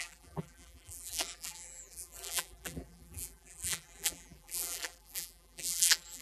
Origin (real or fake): fake